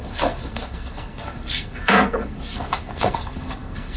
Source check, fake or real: fake